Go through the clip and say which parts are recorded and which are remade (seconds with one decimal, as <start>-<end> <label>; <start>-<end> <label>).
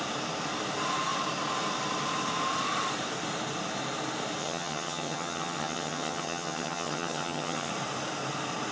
0.0-4.4 recorded; 4.4-7.7 remade; 7.7-8.7 recorded